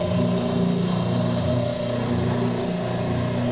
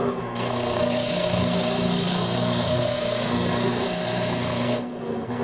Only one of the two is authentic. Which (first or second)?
first